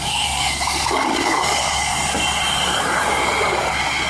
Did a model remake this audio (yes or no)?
yes